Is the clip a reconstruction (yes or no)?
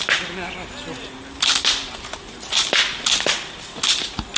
no